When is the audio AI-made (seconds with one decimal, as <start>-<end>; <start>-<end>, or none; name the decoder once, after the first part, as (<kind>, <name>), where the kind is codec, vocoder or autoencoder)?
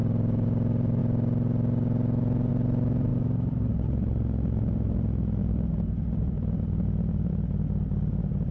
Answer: 3.1-3.7 (vocoder, BigVGAN v2); 5.4-7.3